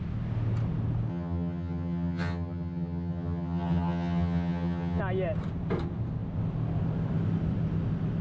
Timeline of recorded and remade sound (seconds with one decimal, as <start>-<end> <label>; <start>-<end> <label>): 0.0-1.1 recorded; 1.1-5.0 remade; 5.0-8.2 recorded

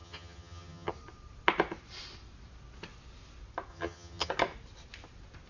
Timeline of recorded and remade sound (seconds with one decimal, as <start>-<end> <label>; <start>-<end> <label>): 0.0-0.9 remade; 0.9-3.7 recorded; 3.7-4.3 remade; 4.3-5.5 recorded

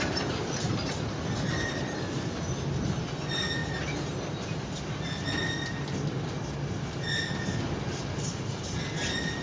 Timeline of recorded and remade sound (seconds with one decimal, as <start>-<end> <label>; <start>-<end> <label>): 0.0-9.4 recorded

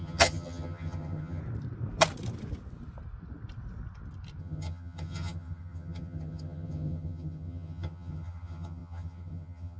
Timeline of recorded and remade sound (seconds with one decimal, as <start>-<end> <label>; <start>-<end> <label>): 0.0-1.4 remade; 1.4-4.4 recorded; 4.4-9.8 remade

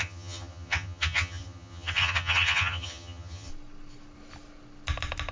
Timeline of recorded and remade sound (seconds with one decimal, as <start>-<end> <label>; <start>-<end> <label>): 0.0-3.5 remade; 3.5-5.3 recorded

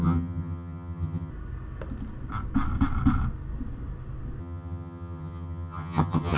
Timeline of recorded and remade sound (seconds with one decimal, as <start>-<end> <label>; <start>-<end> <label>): 0.0-1.3 remade; 1.3-4.4 recorded; 4.4-6.4 remade

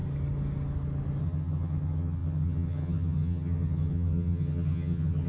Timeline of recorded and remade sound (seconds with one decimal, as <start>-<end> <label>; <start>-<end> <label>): 0.0-1.2 recorded; 1.2-5.3 remade